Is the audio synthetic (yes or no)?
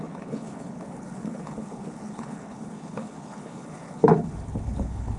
yes